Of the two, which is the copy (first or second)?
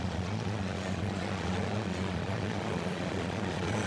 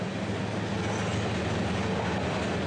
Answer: first